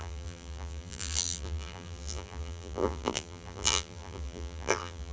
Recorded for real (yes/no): no